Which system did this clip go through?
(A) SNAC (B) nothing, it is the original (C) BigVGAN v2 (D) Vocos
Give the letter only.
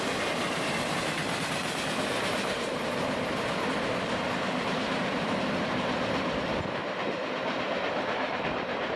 C